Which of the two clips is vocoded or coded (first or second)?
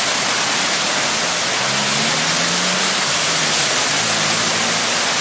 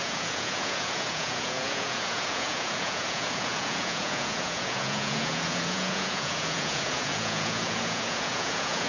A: second